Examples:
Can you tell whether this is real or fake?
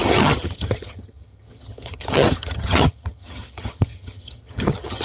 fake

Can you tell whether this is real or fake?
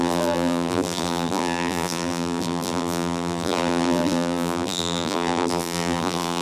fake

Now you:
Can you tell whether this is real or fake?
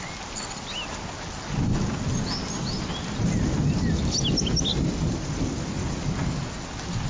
real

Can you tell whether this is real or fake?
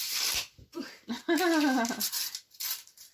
real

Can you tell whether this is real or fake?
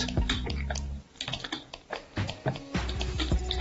real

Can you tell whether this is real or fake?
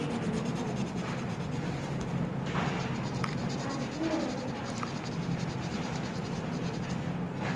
real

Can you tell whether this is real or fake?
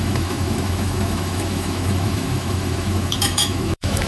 fake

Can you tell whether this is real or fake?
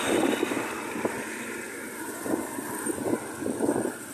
real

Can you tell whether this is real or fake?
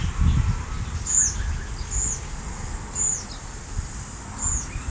real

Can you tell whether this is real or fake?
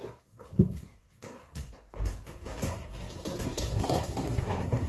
fake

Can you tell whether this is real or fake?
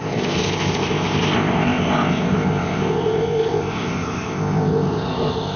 fake